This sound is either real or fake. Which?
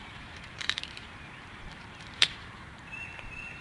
fake